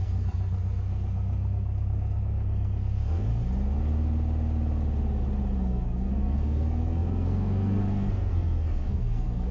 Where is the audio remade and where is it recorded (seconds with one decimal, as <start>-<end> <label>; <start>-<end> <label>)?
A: 0.0-3.3 remade; 3.3-5.6 recorded; 5.6-9.5 remade